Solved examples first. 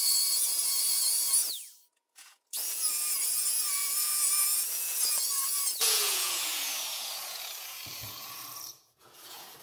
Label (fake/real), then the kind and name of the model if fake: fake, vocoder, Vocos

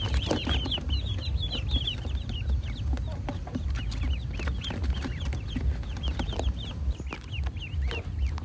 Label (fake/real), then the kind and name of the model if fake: real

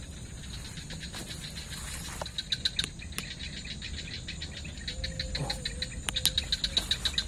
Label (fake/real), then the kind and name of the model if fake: real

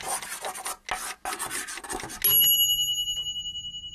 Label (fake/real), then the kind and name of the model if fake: real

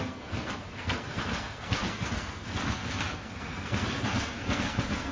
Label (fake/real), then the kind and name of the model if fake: fake, codec, SNAC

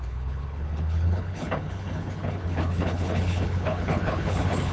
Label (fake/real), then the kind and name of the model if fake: fake, codec, HILCodec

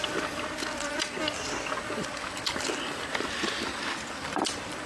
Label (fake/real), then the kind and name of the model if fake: real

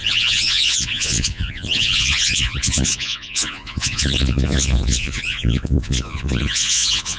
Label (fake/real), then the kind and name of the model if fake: fake, vocoder, Vocos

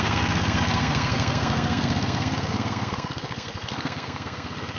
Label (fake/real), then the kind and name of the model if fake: fake, codec, SNAC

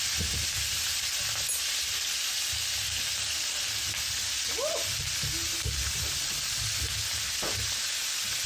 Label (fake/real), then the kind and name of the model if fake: real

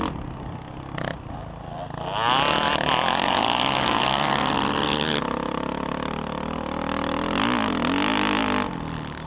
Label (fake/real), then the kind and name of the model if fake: real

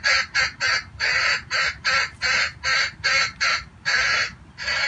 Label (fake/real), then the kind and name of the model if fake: real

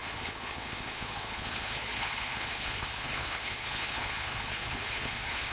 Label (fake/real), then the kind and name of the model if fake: fake, codec, HILCodec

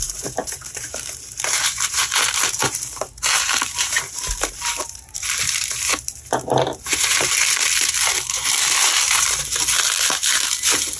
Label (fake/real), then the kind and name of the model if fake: fake, vocoder, BigVGAN v2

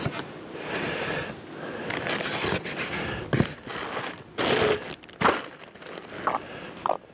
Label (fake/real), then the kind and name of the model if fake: real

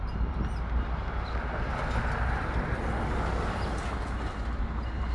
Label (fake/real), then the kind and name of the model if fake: real